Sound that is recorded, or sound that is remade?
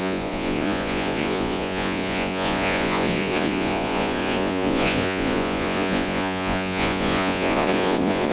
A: remade